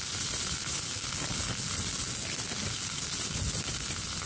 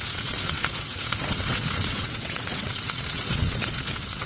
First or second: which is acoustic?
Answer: first